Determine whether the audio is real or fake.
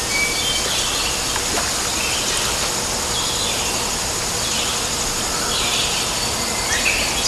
real